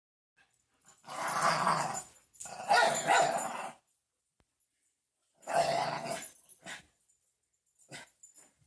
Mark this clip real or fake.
real